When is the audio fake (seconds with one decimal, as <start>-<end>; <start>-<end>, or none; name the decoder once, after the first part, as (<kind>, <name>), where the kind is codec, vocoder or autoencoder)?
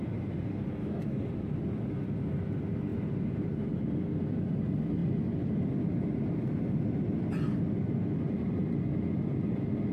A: 0.8-1.3 (codec, DAC)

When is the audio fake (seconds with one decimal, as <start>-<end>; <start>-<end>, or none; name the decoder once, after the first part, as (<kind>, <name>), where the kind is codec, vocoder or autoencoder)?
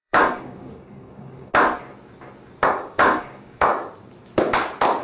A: 0.0-1.5 (codec, DAC); 2.7-3.7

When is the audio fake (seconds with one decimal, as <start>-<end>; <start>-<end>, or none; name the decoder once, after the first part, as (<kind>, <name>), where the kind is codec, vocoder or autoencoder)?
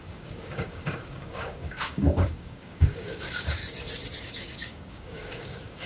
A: 0.0-3.6 (codec, DAC); 4.2-5.9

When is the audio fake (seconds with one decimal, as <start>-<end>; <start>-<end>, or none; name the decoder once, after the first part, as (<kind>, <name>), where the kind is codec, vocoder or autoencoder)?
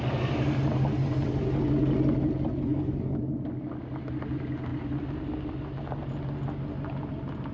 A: 2.7-3.3 (codec, DAC)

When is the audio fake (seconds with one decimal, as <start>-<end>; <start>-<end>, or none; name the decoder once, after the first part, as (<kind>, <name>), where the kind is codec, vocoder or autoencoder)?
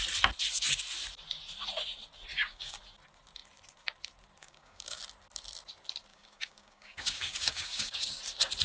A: 2.3-2.8 (codec, DAC); 4.4-5.0; 6.1-8.2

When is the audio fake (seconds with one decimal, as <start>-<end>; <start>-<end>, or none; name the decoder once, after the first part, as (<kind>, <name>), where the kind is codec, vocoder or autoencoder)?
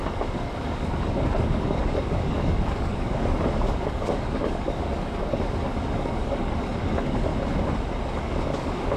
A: 0.0-7.3 (codec, DAC); 8.2-9.0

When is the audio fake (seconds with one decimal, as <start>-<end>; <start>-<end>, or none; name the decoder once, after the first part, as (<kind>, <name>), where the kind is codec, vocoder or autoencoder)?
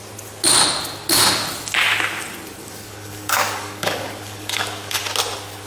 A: 2.6-5.0 (codec, DAC)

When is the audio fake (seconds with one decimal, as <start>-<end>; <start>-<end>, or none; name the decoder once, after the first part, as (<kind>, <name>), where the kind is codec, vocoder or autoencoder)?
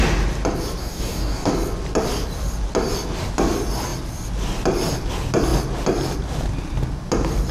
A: 0.8-1.5 (codec, DAC)